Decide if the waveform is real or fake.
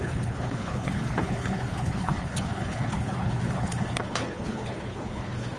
fake